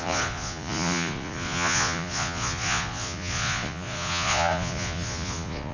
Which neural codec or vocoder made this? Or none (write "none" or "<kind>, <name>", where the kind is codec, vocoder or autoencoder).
vocoder, Vocos